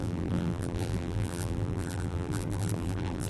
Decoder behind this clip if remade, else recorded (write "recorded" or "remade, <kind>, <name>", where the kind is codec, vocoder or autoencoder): remade, vocoder, BigVGAN v2